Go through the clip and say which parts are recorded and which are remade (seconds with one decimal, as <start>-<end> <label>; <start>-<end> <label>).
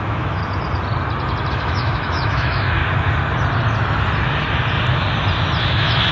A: 0.0-0.4 remade; 0.4-1.5 recorded; 1.5-2.8 remade; 2.8-5.6 recorded; 5.6-6.1 remade